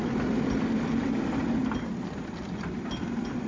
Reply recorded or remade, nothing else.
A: recorded